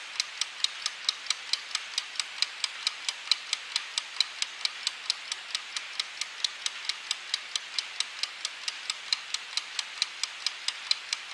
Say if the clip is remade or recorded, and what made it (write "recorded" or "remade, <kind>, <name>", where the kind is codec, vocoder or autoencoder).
recorded